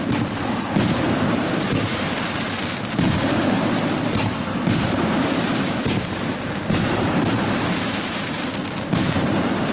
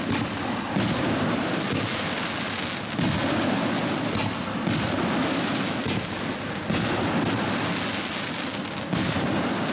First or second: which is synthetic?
first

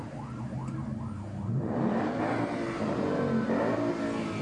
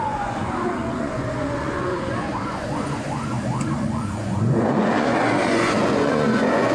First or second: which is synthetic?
second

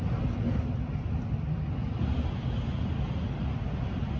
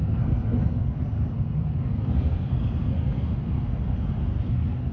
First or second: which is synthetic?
second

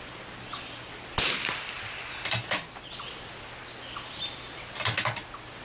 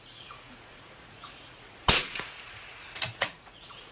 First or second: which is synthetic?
second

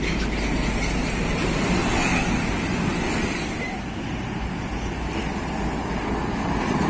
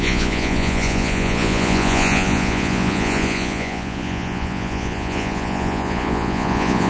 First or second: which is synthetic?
second